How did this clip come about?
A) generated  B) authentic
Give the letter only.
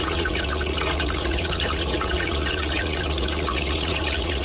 A